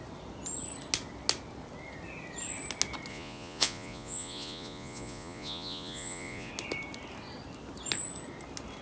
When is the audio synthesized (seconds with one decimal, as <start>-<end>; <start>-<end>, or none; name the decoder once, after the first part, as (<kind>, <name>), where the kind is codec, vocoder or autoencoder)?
3.1-6.5 (vocoder, Vocos)